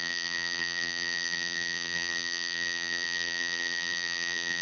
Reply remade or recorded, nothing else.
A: remade